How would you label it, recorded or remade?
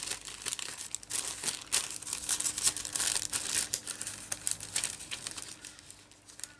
recorded